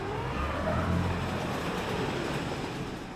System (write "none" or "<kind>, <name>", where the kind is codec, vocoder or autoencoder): none